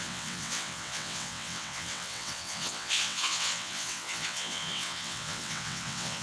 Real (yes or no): no